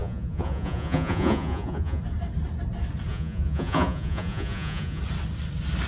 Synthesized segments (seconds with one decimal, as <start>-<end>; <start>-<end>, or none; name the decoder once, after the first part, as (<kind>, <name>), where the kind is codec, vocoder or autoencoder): 0.0-2.0 (vocoder, Vocos); 3.1-5.0